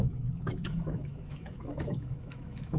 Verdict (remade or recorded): remade